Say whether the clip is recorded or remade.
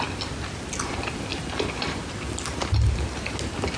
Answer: recorded